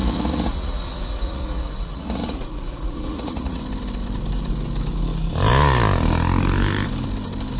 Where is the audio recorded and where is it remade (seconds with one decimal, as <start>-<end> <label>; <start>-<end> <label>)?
0.0-3.6 remade; 3.6-7.6 recorded